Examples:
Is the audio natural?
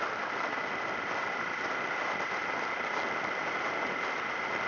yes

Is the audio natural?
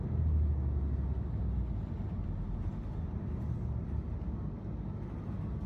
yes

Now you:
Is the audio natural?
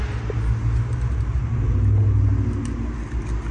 yes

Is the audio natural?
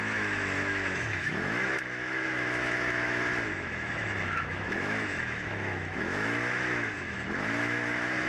no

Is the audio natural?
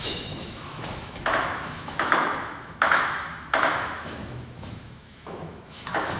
no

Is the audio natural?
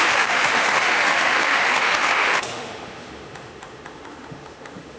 no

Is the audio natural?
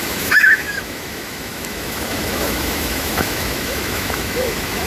no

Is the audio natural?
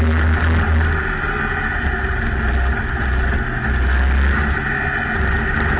yes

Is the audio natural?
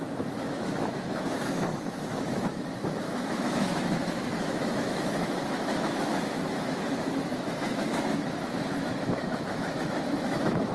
no